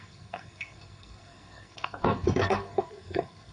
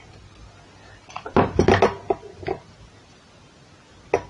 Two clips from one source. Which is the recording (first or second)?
second